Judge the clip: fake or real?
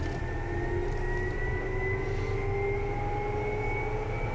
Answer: real